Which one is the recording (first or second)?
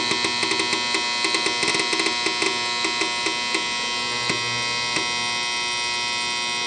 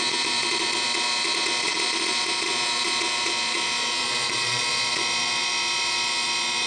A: first